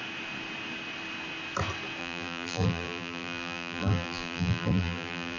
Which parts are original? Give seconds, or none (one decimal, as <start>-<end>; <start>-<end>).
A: 0.0-2.0